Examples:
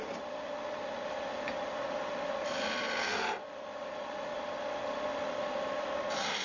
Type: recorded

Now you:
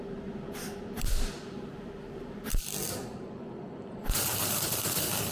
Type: remade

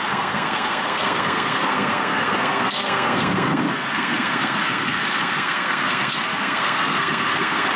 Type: remade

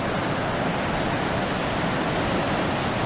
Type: recorded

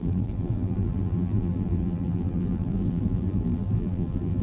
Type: remade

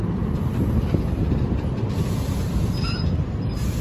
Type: recorded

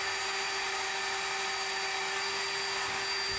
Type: recorded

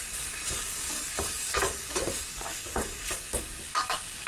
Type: remade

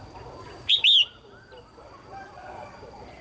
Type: recorded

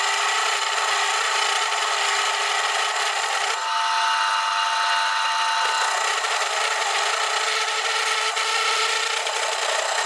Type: recorded